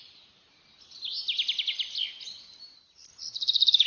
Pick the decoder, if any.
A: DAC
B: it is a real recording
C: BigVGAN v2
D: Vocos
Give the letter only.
B